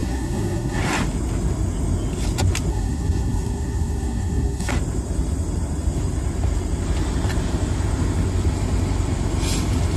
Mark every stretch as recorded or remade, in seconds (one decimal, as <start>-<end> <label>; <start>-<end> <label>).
0.0-0.8 remade; 0.8-2.7 recorded; 2.7-4.7 remade; 4.7-10.0 recorded

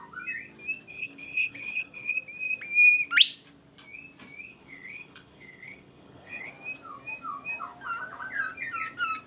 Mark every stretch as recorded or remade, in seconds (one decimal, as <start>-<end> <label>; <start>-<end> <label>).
0.0-0.9 recorded; 0.9-2.1 remade; 2.1-4.5 recorded; 4.5-6.5 remade; 6.5-9.3 recorded